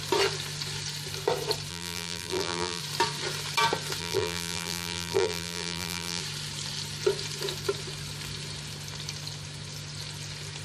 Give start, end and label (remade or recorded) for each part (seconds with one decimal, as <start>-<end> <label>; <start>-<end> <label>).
0.0-1.7 recorded; 1.7-2.8 remade; 2.8-4.0 recorded; 4.0-6.2 remade; 6.2-10.6 recorded